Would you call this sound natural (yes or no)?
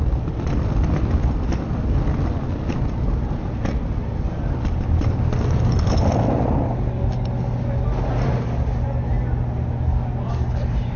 yes